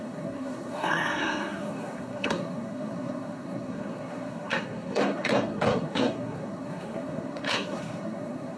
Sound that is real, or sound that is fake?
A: fake